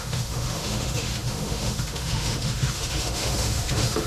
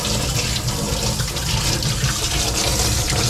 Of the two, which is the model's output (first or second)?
first